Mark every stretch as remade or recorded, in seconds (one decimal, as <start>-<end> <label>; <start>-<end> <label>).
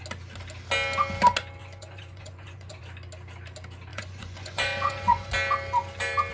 0.0-1.6 recorded; 1.6-2.8 remade; 2.8-3.9 recorded; 3.9-5.3 remade; 5.3-6.3 recorded